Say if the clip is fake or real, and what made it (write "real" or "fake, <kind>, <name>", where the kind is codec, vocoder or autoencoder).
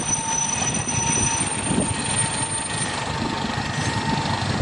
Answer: real